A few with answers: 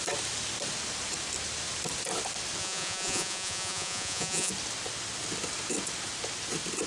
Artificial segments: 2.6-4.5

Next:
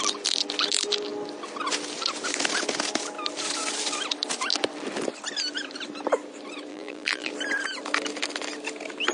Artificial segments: 6.7-7.3

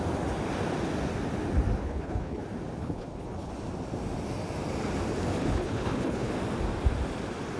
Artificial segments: 1.8-2.4; 2.8-3.5; 5.4-6.3

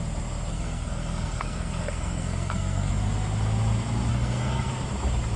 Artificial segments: 0.5-2.9; 4.1-4.7